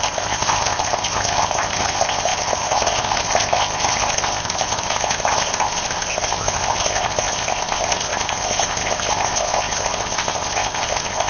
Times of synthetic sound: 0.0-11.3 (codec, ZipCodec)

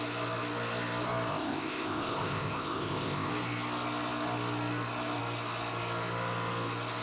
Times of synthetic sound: 1.3-3.3 (codec, ZipCodec)

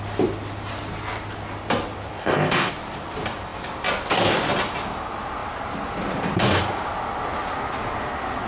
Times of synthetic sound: 2.2-2.7 (codec, ZipCodec)

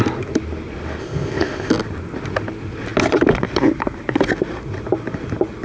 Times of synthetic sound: 1.0-1.7 (codec, ZipCodec)

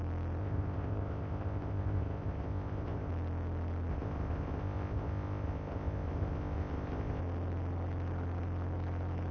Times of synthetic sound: 0.4-3.1 (codec, ZipCodec); 3.9-7.2

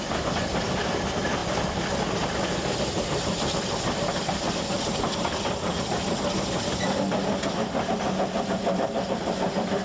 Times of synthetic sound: none

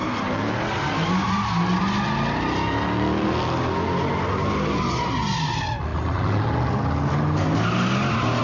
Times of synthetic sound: none